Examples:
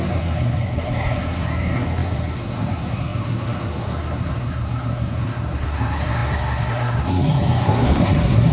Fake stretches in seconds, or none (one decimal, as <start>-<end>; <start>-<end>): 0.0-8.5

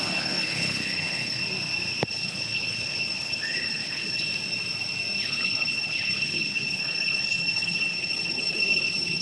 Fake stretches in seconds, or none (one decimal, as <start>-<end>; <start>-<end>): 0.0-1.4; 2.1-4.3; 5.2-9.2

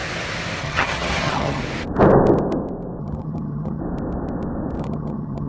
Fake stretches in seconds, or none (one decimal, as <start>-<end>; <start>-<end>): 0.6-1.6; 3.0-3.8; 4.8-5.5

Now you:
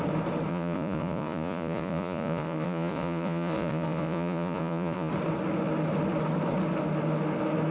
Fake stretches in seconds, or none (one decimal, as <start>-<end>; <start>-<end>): 0.5-5.1

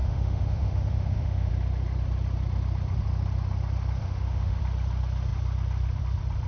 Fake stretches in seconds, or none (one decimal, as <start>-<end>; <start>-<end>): 0.0-1.5; 4.0-4.6